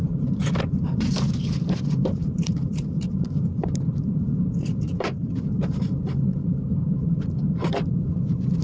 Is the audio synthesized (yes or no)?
yes